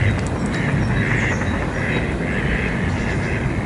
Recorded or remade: recorded